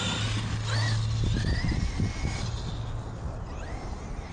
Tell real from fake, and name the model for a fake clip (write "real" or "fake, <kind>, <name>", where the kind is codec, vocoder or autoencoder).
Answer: real